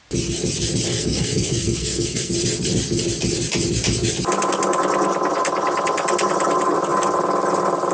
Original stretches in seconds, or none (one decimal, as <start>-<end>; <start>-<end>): 0.0-0.9; 2.3-7.9